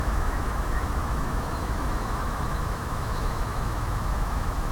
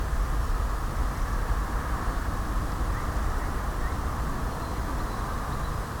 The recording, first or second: second